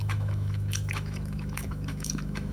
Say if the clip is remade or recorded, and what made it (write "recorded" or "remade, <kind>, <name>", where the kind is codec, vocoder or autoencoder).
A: remade, autoencoder, DAC-VAE